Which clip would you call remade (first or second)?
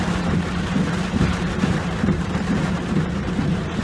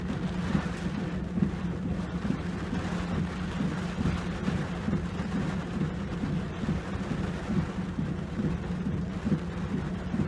first